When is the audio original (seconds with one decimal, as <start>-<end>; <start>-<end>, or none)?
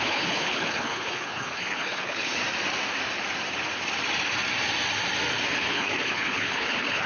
2.4-5.6